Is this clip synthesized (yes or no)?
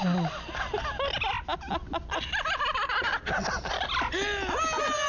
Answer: no